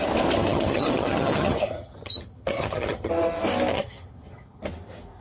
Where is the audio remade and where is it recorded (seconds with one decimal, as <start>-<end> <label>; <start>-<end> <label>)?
0.0-0.4 recorded; 0.4-3.1 remade; 3.1-3.7 recorded; 3.7-4.6 remade; 4.6-5.2 recorded